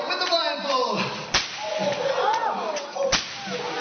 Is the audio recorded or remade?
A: recorded